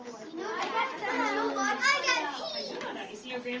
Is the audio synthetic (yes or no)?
no